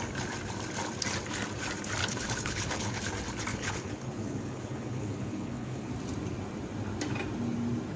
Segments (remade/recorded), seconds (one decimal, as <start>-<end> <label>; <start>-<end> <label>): 0.0-2.0 recorded; 2.0-3.0 remade; 3.0-3.5 recorded; 3.5-5.9 remade; 5.9-8.0 recorded